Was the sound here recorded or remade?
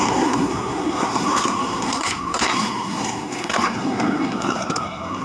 remade